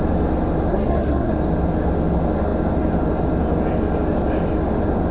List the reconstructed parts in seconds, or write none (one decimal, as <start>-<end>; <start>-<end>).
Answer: 0.7-1.3